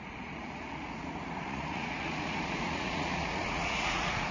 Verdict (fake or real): fake